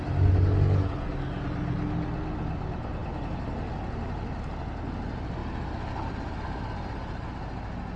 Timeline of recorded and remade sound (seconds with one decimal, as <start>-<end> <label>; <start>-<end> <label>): 0.0-8.0 recorded